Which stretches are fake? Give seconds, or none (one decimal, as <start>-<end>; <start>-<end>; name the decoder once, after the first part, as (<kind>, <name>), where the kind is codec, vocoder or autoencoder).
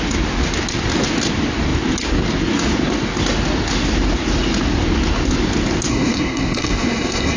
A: 5.9-7.4 (codec, SNAC)